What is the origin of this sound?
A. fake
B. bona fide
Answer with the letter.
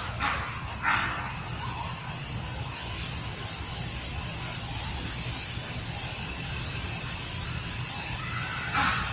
B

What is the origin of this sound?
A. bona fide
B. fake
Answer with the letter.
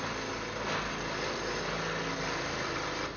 A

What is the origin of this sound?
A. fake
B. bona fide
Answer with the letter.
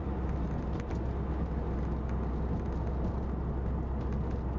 B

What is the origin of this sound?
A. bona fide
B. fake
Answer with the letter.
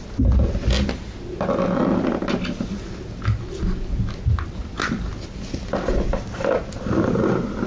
A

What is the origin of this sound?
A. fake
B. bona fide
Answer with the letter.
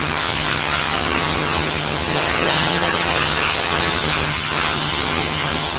A